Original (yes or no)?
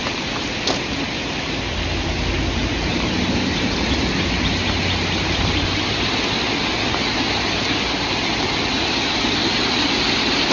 yes